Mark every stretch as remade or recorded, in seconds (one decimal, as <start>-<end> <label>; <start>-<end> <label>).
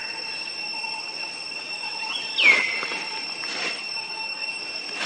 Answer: 0.0-3.8 recorded; 3.8-4.5 remade; 4.5-5.1 recorded